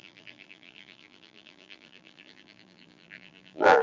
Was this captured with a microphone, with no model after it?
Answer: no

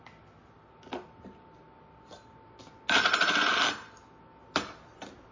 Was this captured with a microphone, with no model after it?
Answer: yes